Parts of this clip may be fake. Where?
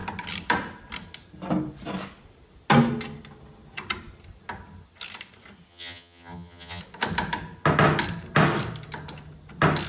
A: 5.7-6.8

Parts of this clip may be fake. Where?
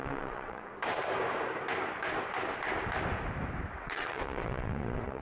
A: 0.0-0.7; 3.8-5.2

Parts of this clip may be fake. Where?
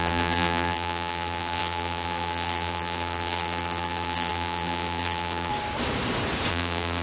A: 0.0-5.5; 6.5-7.0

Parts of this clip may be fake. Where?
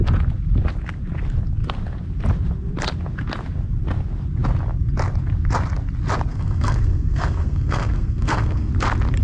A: 6.3-8.7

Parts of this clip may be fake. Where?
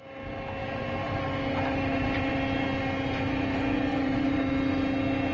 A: 0.6-2.4; 3.9-4.5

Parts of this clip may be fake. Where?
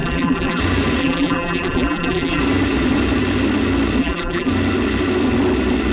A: 0.0-0.6; 1.0-2.4; 4.0-4.5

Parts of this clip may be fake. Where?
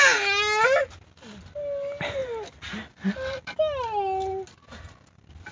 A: none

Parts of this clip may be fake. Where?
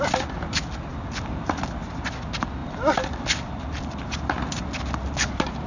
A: 0.9-1.6; 2.6-5.3